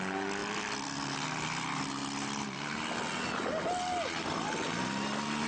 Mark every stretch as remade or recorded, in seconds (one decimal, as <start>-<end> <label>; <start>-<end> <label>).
0.0-0.4 recorded; 0.4-1.1 remade; 1.1-5.5 recorded